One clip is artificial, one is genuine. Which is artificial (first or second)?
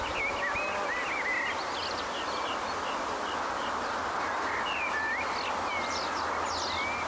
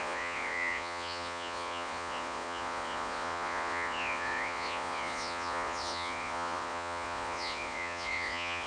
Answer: second